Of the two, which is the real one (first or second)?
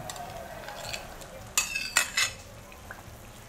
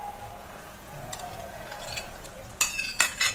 first